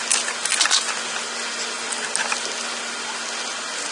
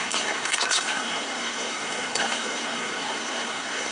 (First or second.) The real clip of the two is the first